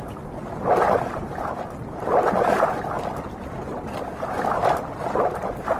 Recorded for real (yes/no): yes